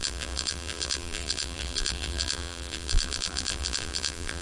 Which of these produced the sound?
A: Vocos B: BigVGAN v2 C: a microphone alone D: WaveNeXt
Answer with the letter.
B